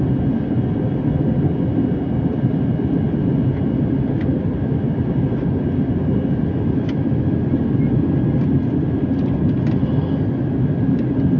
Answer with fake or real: real